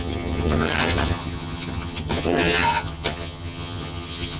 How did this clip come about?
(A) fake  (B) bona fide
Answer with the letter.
A